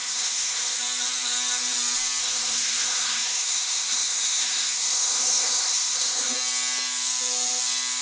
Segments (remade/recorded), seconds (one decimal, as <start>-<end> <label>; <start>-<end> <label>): 0.0-0.8 remade; 0.8-2.2 recorded; 2.2-6.3 remade; 6.3-8.0 recorded